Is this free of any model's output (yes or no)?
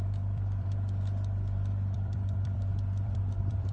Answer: no